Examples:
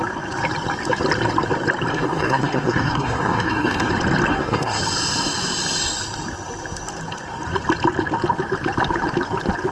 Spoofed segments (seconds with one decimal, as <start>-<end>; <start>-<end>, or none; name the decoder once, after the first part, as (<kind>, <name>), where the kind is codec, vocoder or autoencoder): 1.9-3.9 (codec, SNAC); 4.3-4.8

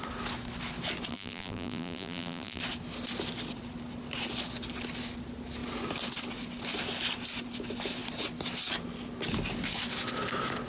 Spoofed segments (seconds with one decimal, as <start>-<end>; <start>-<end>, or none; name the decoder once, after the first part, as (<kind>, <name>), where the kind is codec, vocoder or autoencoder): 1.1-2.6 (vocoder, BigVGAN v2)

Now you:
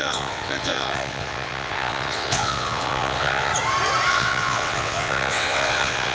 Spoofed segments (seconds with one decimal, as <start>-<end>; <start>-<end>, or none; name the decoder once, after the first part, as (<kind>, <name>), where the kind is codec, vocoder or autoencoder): 0.0-3.5 (vocoder, WaveNeXt); 4.1-6.1

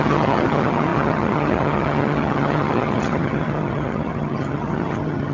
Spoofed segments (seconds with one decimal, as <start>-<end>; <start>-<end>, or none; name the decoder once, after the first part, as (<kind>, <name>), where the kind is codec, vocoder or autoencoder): 0.0-5.3 (vocoder, HiFi-GAN)

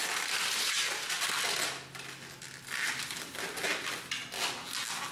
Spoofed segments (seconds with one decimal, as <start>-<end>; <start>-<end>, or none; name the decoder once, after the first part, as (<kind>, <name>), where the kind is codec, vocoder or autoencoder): none

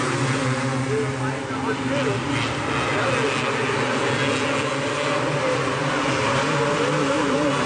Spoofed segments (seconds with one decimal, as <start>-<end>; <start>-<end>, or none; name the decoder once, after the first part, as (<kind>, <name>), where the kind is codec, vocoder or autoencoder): none

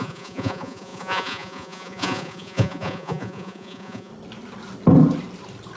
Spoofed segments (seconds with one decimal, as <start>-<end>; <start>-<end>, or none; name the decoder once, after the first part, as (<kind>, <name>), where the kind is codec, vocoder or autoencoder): 0.0-4.1 (vocoder, Vocos)

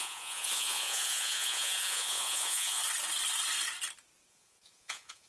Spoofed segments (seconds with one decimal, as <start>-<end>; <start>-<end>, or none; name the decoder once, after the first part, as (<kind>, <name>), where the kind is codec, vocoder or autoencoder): 0.0-2.8 (vocoder, Vocos); 4.3-5.3